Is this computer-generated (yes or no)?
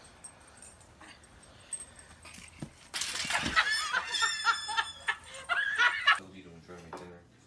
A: no